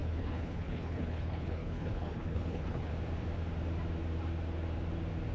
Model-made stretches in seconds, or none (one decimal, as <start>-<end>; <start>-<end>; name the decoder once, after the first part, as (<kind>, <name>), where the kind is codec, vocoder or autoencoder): 0.0-2.9 (codec, HILCodec)